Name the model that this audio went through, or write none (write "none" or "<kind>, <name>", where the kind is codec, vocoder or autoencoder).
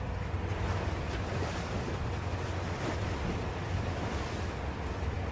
vocoder, BigVGAN v2